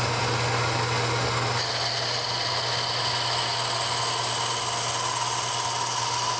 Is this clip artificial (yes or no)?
no